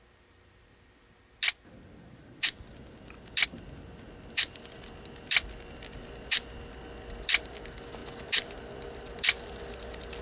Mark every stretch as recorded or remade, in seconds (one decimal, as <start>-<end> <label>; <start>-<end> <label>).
0.0-10.2 recorded